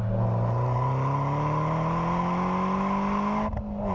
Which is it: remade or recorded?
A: recorded